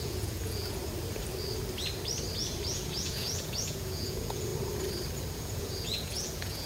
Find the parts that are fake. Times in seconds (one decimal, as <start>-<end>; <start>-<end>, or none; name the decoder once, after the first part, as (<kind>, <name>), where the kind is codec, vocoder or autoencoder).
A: 0.0-0.8 (vocoder, Vocos); 2.7-4.5; 5.3-6.7